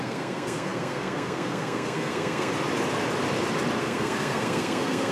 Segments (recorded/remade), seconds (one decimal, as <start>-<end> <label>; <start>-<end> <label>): 0.0-2.5 remade; 2.5-3.8 recorded; 3.8-5.1 remade